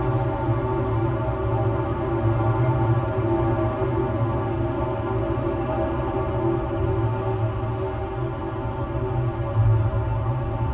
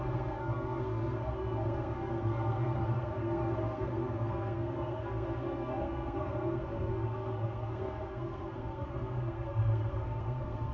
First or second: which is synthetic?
second